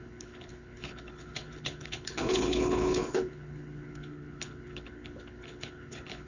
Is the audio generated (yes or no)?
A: yes